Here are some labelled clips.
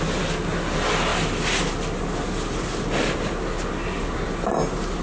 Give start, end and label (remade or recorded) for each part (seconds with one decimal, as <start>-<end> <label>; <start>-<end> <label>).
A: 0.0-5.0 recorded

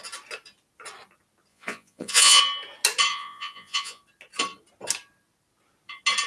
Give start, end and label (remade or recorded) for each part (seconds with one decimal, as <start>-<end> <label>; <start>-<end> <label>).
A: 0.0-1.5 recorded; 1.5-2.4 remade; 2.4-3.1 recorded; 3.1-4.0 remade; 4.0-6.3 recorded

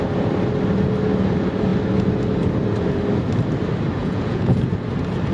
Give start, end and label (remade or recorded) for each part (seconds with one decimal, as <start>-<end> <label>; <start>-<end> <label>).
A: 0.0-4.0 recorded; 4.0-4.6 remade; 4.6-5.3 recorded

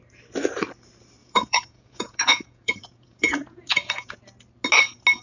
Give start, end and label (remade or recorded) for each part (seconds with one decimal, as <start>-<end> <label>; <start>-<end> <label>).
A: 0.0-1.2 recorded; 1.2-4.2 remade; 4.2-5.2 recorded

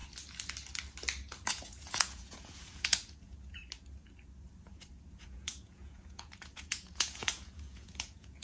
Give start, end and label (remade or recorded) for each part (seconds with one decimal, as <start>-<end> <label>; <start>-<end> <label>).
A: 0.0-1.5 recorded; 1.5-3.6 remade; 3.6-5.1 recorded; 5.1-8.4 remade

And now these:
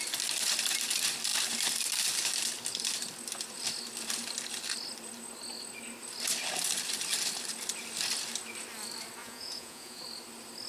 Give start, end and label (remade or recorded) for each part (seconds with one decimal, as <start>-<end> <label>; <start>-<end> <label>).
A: 0.0-9.2 recorded; 9.2-10.0 remade; 10.0-10.7 recorded